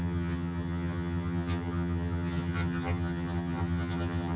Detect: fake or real fake